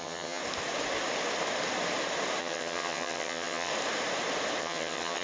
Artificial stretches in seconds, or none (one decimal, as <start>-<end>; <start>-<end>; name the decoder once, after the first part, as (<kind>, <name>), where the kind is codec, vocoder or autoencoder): 0.0-0.4 (vocoder, HiFi-GAN); 2.4-3.7; 4.6-5.2